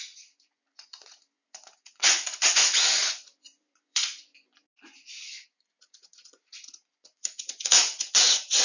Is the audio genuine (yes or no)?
no